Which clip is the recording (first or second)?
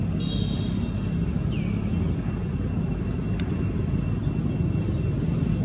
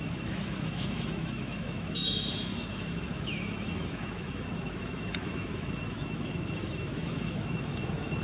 first